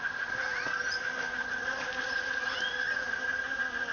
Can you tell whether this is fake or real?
real